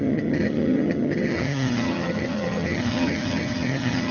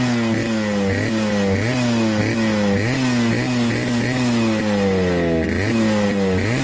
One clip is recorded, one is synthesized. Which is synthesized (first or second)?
first